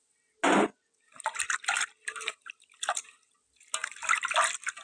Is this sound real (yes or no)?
yes